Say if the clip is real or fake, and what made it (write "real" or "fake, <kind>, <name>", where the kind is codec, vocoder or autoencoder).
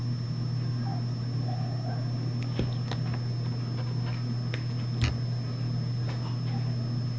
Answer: real